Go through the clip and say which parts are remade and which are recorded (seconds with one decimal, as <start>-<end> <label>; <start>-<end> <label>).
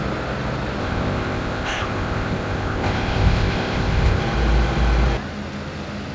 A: 0.0-0.8 recorded; 0.8-4.2 remade; 4.2-6.1 recorded